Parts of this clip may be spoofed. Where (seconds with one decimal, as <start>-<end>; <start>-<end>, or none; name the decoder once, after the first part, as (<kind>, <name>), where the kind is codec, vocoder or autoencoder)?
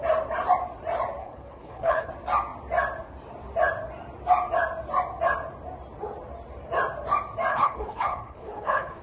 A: 1.2-2.1 (codec, HILCodec); 7.5-9.0